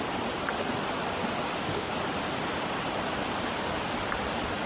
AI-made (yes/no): no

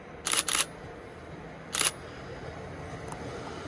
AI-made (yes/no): no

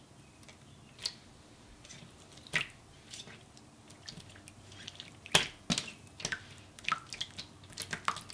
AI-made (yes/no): no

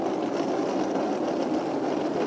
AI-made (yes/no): no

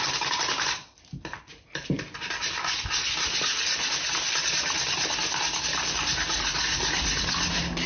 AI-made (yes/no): no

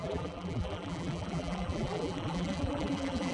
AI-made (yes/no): yes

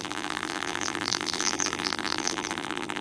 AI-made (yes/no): yes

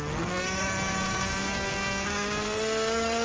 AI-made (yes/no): yes